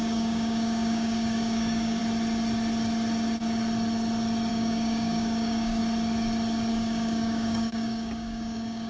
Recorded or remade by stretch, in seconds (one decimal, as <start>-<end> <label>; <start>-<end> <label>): 0.0-2.0 remade; 2.0-4.5 recorded; 4.5-5.8 remade; 5.8-6.7 recorded; 6.7-8.9 remade